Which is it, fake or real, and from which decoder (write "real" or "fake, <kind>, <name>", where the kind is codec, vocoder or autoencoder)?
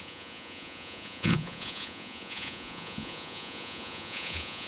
fake, vocoder, Vocos